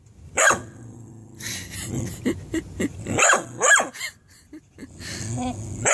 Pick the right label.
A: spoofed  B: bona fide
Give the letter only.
B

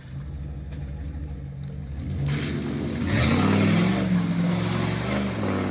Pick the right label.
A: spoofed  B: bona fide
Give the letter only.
B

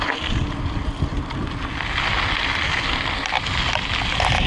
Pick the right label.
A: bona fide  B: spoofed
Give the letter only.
A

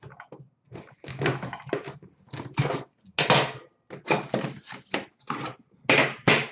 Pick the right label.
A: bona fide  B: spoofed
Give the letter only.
A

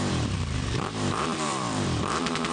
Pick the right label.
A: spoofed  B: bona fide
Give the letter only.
A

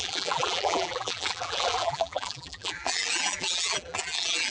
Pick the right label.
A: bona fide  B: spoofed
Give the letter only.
B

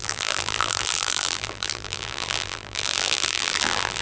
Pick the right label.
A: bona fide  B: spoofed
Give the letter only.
B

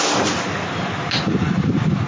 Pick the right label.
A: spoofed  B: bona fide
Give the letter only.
B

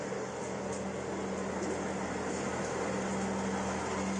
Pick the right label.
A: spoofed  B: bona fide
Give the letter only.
B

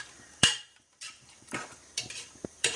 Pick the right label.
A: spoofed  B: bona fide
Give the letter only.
A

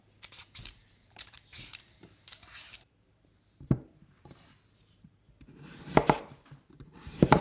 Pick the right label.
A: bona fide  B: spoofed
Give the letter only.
B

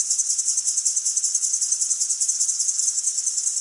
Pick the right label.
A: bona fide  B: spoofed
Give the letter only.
B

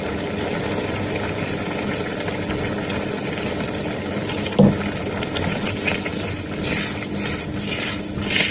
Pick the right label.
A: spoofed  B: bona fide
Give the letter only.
B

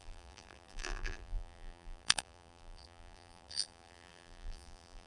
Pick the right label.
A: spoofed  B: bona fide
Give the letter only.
A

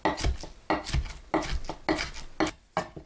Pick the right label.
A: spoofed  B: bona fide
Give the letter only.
B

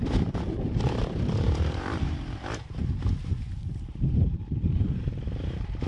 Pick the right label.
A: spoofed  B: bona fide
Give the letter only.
A